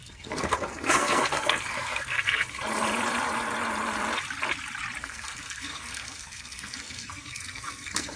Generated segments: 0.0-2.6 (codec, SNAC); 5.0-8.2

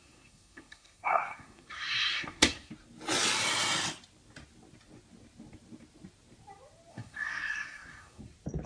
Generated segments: 0.0-2.7 (codec, SNAC); 6.9-8.2

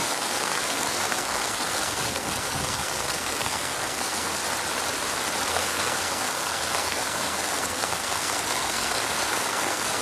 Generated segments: 0.0-4.4 (codec, SNAC); 5.5-10.0